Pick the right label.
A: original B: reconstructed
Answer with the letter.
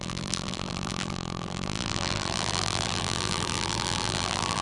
B